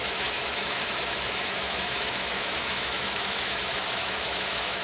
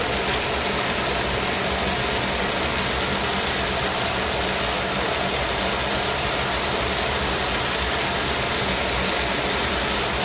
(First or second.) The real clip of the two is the second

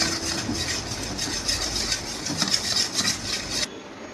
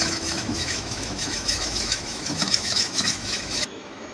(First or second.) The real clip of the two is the first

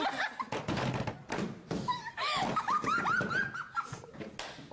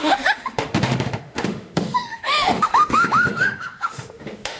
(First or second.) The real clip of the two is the first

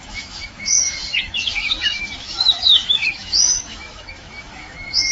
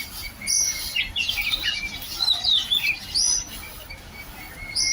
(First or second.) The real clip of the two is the second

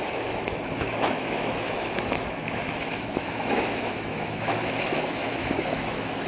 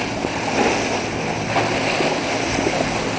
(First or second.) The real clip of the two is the second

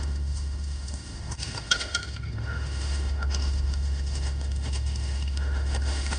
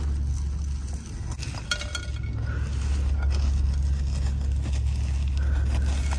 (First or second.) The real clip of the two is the second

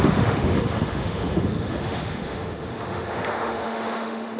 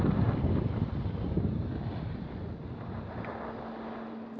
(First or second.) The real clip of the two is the second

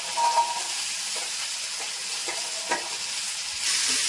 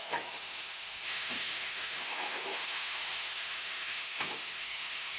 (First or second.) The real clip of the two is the first